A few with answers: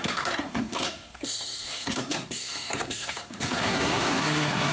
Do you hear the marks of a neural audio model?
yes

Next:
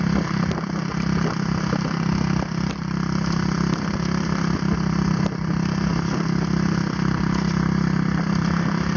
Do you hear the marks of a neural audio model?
no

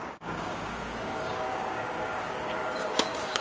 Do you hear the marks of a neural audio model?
yes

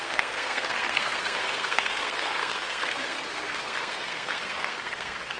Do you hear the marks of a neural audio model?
yes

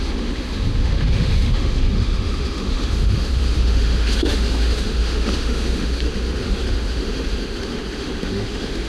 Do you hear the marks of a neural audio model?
yes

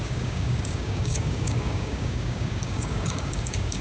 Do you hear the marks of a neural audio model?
yes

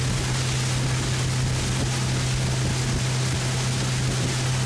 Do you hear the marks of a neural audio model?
no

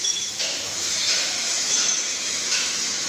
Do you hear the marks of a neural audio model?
yes